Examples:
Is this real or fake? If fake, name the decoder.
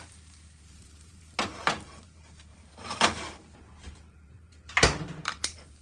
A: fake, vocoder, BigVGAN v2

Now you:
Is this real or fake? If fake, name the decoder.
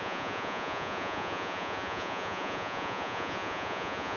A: fake, vocoder, Vocos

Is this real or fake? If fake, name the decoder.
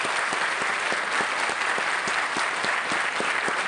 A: real